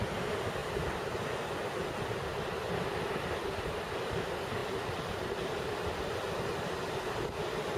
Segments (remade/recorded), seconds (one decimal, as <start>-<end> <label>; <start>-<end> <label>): 0.0-7.8 recorded